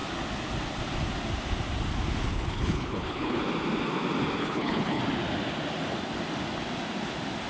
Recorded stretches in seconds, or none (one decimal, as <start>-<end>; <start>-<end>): 0.0-2.3; 3.4-4.4; 5.0-7.5

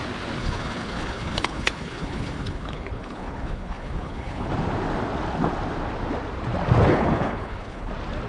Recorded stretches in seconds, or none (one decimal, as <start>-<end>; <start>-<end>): 0.0-0.4; 4.5-6.9; 7.9-8.3

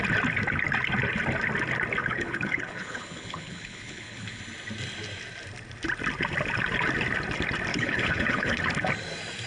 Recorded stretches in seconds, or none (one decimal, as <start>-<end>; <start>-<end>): 0.0-2.0; 4.4-7.7; 8.6-9.5